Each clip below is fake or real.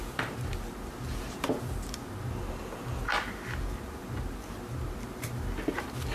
fake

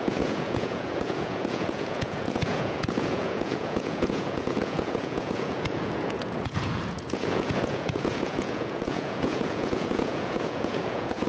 fake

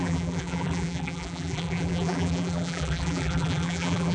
fake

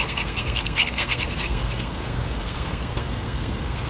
fake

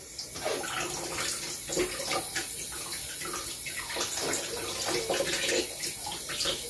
real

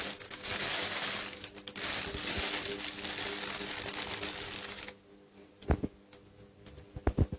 real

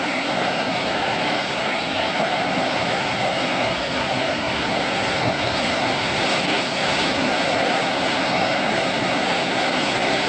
fake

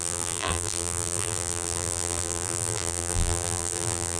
fake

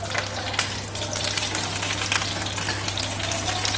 real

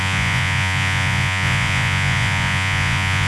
fake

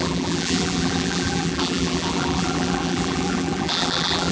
fake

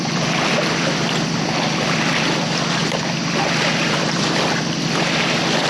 real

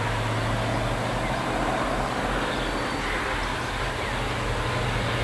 real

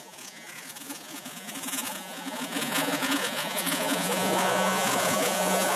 fake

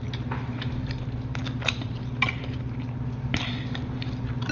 real